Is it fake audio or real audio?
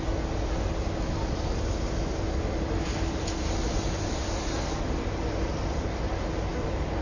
real